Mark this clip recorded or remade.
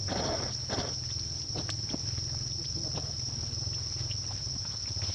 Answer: recorded